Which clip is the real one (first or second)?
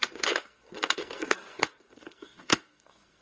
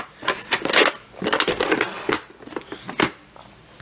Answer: second